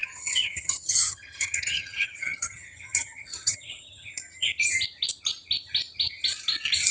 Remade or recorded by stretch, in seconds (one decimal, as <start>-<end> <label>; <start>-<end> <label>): 0.0-4.1 remade; 4.1-6.9 recorded